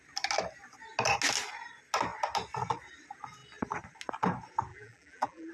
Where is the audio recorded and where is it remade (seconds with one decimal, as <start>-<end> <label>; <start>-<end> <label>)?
0.0-4.7 recorded; 4.7-5.5 remade